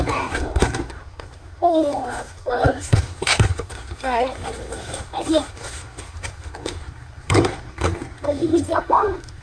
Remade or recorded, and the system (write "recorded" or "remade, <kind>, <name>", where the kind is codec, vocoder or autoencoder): remade, codec, SNAC